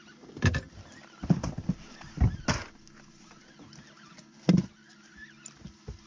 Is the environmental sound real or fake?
real